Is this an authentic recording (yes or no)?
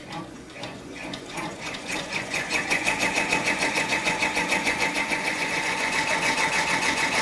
no